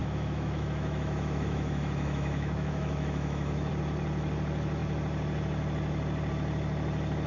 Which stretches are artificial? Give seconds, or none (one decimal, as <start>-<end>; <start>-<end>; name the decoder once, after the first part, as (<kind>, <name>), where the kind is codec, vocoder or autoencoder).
0.0-3.7 (autoencoder, DAC-VAE)